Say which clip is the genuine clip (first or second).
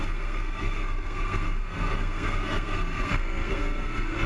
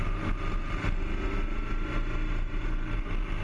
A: second